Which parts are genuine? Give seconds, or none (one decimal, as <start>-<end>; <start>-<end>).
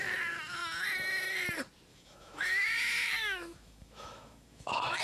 0.0-1.9